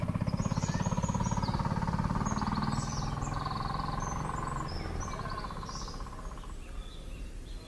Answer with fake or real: real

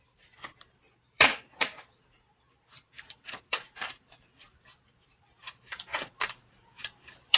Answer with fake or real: fake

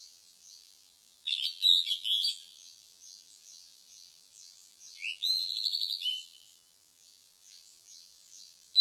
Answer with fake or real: fake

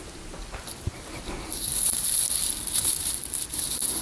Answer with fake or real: real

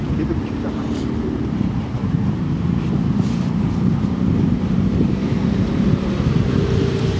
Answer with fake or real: fake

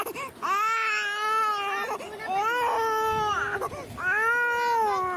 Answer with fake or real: real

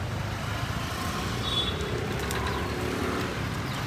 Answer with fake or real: real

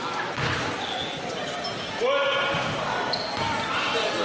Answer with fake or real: real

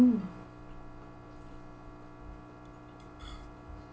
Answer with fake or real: real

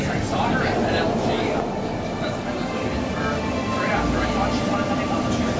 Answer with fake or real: real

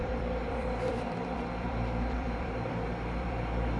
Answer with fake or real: fake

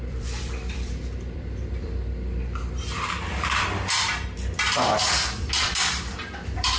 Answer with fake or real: fake